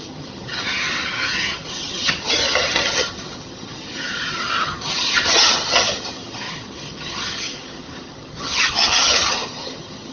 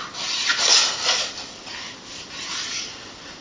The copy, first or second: first